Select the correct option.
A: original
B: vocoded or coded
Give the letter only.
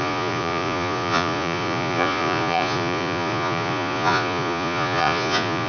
B